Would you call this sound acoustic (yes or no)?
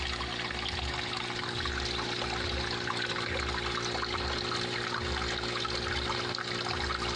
yes